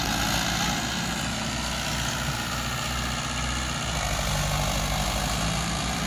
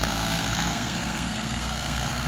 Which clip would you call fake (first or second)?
second